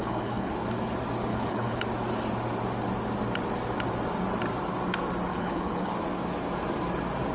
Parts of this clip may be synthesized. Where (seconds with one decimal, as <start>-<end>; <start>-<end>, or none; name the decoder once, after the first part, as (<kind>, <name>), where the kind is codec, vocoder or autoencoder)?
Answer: 0.0-0.5 (codec, HILCodec); 1.3-1.8; 5.3-5.9